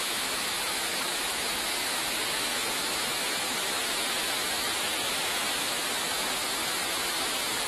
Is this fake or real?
fake